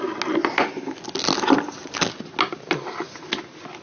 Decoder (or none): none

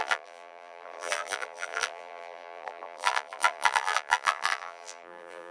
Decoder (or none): vocoder, BigVGAN v2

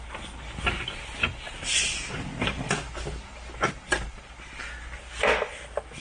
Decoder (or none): none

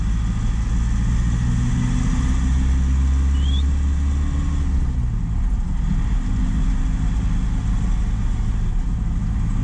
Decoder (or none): none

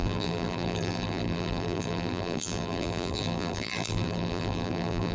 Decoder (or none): vocoder, BigVGAN v2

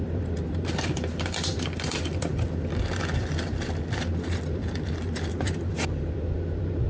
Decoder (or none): vocoder, BigVGAN v2